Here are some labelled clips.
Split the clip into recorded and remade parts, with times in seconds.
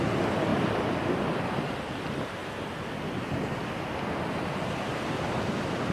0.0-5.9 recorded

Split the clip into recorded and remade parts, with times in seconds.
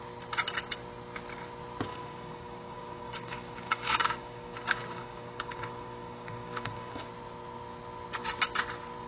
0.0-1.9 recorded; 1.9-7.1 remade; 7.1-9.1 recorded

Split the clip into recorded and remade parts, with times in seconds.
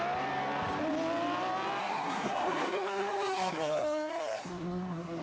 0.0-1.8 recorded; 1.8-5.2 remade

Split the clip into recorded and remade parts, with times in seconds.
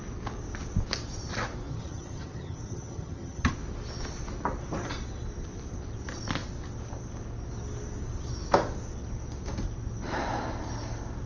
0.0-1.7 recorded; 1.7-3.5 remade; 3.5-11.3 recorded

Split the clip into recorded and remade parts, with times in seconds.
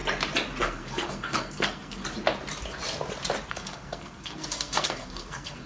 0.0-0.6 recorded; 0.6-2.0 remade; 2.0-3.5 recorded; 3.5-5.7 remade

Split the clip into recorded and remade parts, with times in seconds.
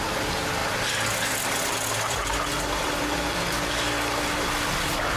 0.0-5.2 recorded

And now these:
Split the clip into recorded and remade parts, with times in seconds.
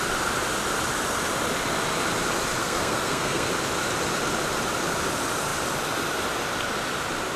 0.0-2.6 recorded; 2.6-3.5 remade; 3.5-7.4 recorded